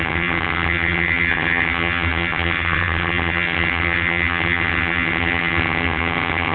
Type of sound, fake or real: fake